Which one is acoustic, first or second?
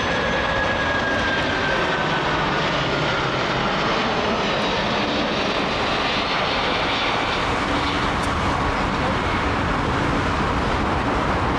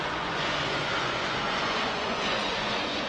first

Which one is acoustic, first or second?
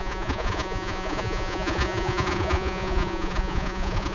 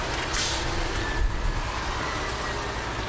second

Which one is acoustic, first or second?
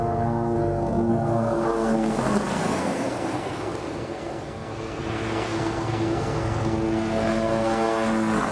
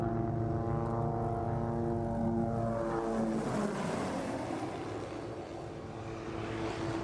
second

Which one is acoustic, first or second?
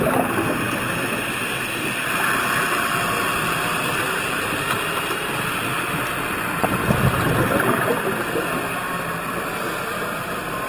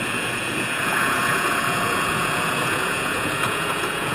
first